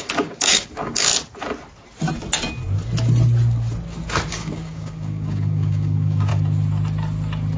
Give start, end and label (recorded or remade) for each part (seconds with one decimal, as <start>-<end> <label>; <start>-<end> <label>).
0.0-1.1 remade; 1.1-4.3 recorded; 4.3-6.3 remade; 6.3-7.6 recorded